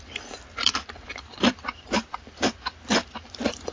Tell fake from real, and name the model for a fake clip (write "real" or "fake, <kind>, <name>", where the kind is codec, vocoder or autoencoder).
fake, vocoder, BigVGAN v2